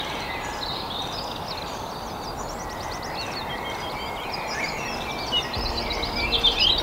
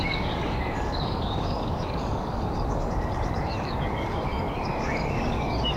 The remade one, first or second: second